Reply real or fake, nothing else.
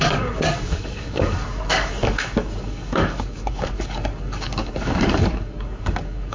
fake